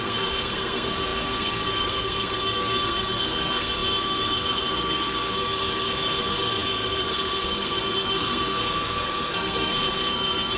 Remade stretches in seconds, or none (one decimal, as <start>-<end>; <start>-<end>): 0.0-10.6